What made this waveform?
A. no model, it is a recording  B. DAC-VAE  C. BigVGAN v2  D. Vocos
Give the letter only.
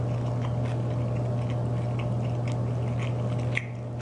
A